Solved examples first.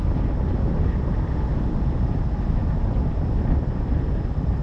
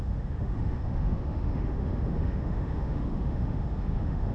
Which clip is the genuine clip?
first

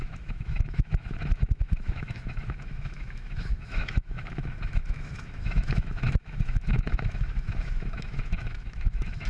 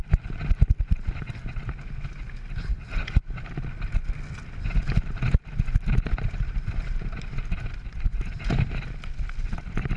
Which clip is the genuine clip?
second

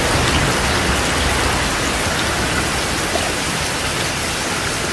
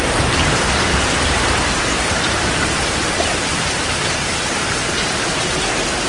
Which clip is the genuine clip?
first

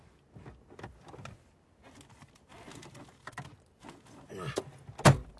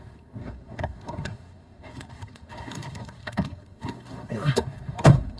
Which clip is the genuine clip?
first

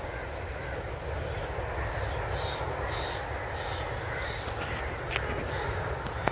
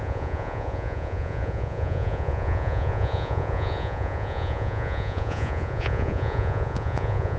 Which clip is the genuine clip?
first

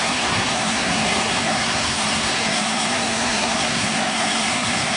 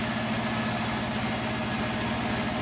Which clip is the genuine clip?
second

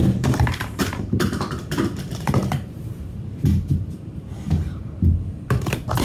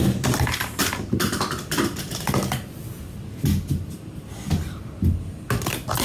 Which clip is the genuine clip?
second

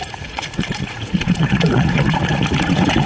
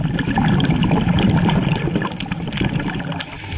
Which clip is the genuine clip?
second